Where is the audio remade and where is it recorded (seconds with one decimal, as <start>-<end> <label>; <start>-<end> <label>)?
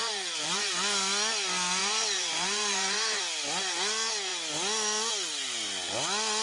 0.0-0.7 remade; 0.7-1.8 recorded; 1.8-3.2 remade; 3.2-6.4 recorded